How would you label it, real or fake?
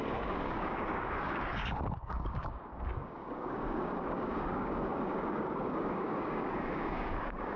fake